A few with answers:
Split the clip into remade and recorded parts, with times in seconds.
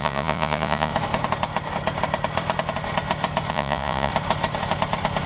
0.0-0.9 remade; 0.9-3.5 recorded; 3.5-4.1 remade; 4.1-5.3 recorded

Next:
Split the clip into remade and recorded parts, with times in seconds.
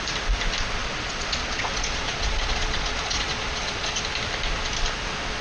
0.0-0.8 recorded; 0.8-4.0 remade; 4.0-5.4 recorded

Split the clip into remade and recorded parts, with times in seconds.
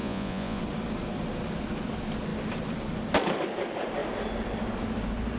0.0-0.6 remade; 0.6-5.4 recorded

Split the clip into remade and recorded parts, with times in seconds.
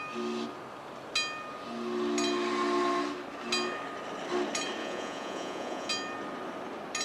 0.0-4.8 recorded; 4.8-5.9 remade; 5.9-7.0 recorded